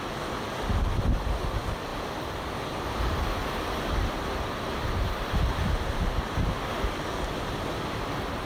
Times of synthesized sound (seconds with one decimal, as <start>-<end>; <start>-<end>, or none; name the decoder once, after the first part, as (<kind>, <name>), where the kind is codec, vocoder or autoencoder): 3.4-6.7 (vocoder, BigVGAN v2)